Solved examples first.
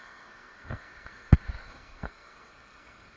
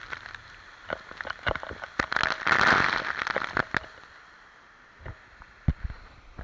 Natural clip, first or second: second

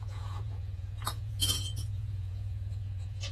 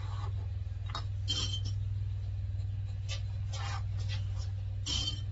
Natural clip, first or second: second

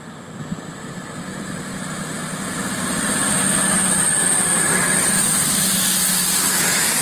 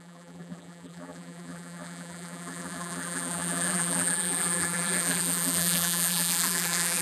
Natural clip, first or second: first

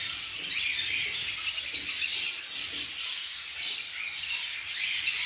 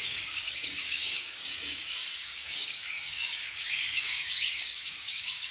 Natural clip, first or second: first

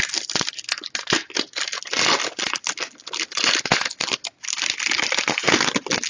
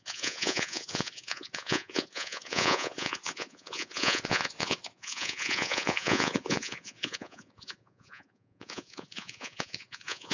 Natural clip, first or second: first